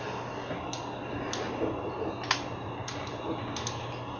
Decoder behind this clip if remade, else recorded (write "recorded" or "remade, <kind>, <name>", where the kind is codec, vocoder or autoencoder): recorded